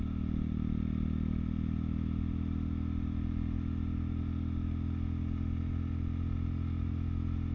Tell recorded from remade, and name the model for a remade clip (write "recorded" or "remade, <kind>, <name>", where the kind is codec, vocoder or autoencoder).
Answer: recorded